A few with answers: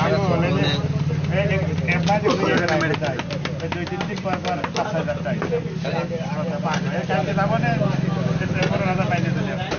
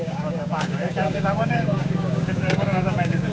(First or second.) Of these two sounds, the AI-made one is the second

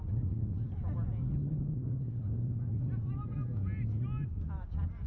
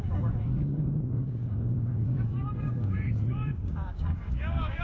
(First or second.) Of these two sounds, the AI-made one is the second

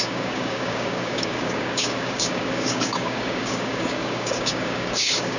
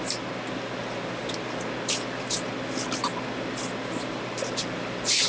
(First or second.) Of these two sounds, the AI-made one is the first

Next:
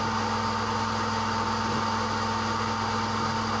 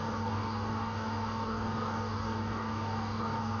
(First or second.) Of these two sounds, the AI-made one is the second